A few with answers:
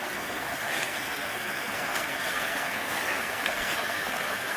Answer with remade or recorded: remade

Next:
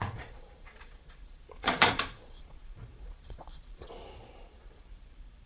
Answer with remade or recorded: remade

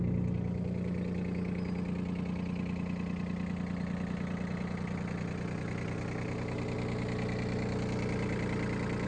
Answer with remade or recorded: recorded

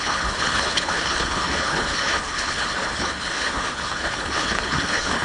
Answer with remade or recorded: remade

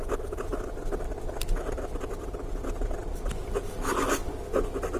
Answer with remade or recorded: recorded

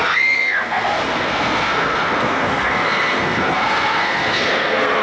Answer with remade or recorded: remade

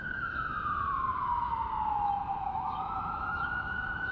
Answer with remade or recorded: remade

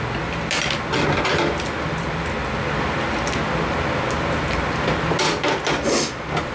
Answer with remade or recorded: recorded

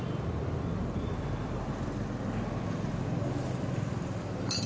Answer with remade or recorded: recorded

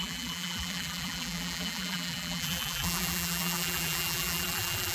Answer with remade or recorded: remade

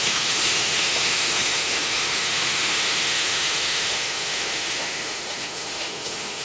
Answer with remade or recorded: remade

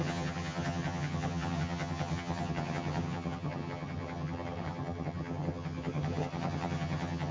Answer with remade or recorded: remade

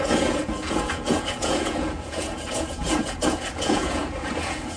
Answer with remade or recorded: remade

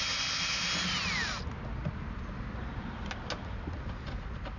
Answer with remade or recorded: recorded